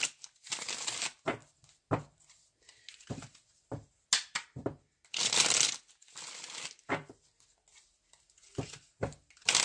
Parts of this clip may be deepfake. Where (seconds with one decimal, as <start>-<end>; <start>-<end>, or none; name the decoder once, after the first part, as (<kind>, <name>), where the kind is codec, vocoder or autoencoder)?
none